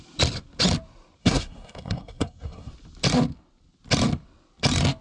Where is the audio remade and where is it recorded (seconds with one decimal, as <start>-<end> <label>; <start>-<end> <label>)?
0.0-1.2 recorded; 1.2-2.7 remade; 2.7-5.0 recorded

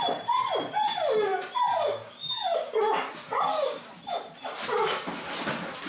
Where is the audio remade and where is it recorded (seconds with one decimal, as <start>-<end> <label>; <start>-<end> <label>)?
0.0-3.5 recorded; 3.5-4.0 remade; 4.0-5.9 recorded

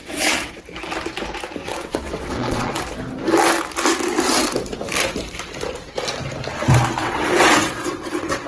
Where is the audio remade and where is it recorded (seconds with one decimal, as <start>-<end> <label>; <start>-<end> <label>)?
0.0-0.6 remade; 0.6-1.6 recorded; 1.6-2.8 remade; 2.8-7.0 recorded; 7.0-8.5 remade

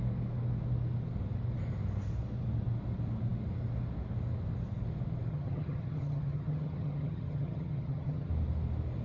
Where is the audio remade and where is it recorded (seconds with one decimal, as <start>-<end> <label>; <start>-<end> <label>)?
0.0-5.3 recorded; 5.3-8.3 remade; 8.3-9.0 recorded